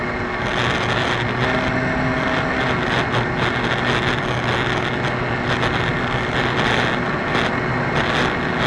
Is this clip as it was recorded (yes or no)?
yes